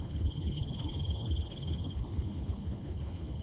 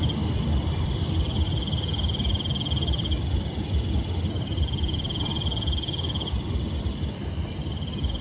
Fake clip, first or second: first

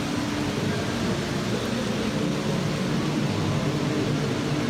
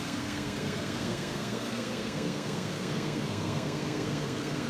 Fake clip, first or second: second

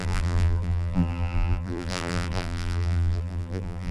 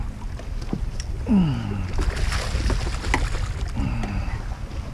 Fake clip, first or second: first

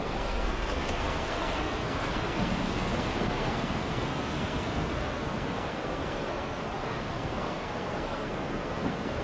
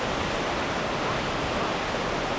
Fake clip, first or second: first